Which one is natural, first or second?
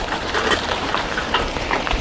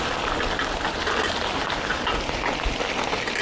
second